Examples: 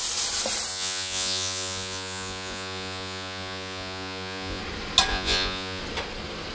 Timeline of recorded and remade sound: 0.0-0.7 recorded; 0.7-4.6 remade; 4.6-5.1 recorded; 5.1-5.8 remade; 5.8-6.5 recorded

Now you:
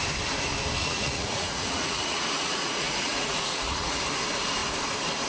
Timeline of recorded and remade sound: 0.0-0.8 recorded; 0.8-4.0 remade; 4.0-5.3 recorded

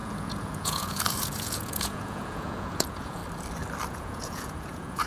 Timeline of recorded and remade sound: 0.0-3.2 remade; 3.2-3.9 recorded; 3.9-5.1 remade

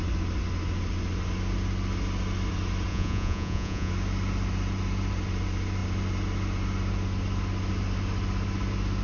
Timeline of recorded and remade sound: 0.0-2.9 recorded; 2.9-3.9 remade; 3.9-9.0 recorded